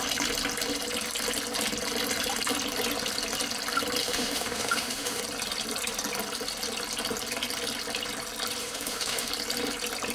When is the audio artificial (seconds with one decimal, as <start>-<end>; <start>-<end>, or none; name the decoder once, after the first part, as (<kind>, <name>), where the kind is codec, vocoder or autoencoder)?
4.0-5.2 (autoencoder, DAC-VAE); 8.6-9.3